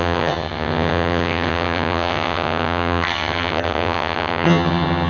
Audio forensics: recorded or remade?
remade